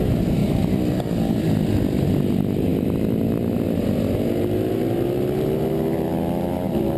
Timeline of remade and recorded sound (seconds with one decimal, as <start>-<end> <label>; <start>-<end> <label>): 0.0-0.4 recorded; 0.4-1.1 remade; 1.1-7.0 recorded